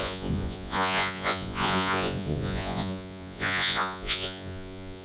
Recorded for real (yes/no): no